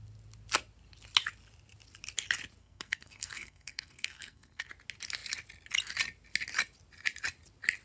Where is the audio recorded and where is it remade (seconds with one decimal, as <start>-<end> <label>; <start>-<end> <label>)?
0.0-2.6 recorded; 2.6-4.7 remade; 4.7-7.8 recorded